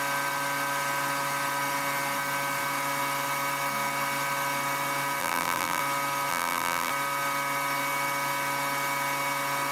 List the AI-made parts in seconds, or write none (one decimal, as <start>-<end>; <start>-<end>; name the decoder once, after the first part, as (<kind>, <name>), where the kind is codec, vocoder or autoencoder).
5.2-5.8 (vocoder, BigVGAN v2); 6.3-6.9

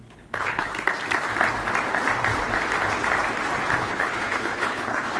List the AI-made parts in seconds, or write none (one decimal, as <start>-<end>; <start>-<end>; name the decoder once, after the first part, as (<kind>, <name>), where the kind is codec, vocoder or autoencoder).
0.0-0.7 (codec, HILCodec); 3.8-5.2

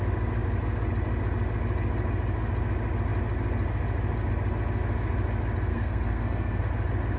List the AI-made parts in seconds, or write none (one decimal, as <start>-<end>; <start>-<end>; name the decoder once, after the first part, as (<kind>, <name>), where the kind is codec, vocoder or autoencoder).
5.7-6.6 (codec, SNAC)

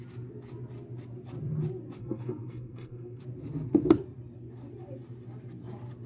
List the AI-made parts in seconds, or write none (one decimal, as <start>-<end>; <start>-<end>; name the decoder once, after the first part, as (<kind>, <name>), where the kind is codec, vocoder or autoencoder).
2.0-3.2 (codec, SNAC)

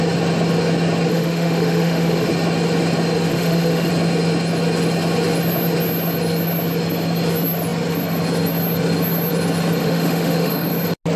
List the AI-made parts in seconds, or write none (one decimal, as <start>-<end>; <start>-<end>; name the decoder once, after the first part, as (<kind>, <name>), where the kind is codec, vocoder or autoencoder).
1.1-2.3 (autoencoder, DAC-VAE); 3.3-3.9; 9.8-10.7

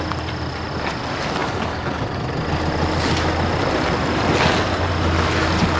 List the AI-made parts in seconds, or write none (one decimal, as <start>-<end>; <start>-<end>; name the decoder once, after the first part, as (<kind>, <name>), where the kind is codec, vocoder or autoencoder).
none

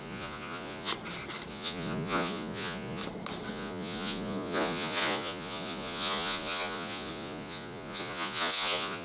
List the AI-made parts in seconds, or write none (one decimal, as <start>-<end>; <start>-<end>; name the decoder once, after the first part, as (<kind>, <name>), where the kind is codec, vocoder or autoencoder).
0.0-0.9 (vocoder, Vocos); 1.5-3.0; 3.5-9.0